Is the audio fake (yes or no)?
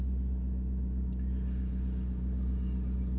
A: no